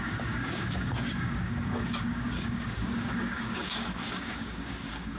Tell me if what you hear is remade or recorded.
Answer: remade